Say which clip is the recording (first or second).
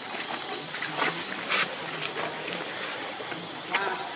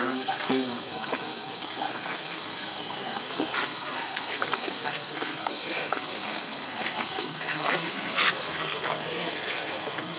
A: first